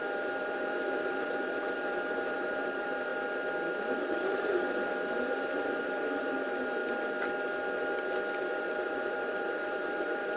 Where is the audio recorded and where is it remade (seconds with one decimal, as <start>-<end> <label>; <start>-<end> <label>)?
0.0-3.1 remade; 3.1-3.8 recorded; 3.8-6.8 remade; 6.8-8.6 recorded; 8.6-10.4 remade